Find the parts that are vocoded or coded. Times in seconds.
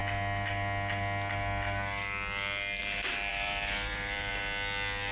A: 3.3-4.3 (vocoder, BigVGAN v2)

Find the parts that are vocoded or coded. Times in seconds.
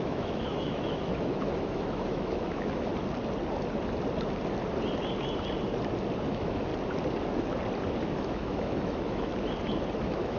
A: 0.0-2.9 (autoencoder, DAC-VAE); 6.3-6.7; 8.0-9.3; 10.0-10.4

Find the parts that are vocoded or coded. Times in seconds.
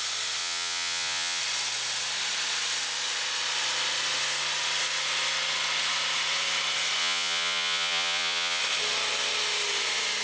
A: 0.4-1.4 (vocoder, Vocos); 7.0-8.6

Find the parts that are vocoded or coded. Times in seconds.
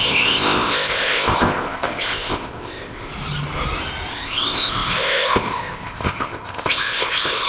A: 0.0-3.1 (codec, ZipCodec); 4.1-7.5